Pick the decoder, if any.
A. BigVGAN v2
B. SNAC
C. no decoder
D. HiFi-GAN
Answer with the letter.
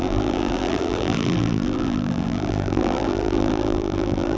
A